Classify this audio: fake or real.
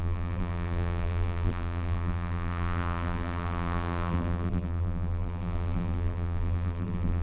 fake